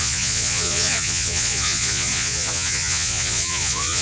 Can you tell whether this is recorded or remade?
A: remade